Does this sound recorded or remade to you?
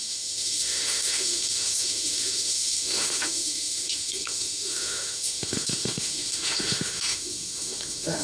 remade